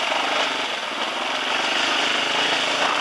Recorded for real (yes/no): yes